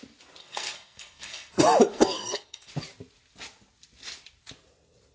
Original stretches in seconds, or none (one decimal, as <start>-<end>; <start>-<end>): 0.0-0.4; 1.5-1.9; 2.7-5.1